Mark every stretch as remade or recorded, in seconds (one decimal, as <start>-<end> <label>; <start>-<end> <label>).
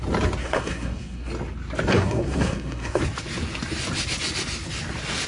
0.0-0.4 recorded; 0.4-1.3 remade; 1.3-1.9 recorded; 1.9-3.0 remade; 3.0-5.3 recorded